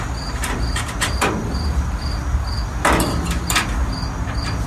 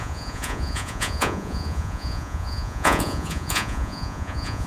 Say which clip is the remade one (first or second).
second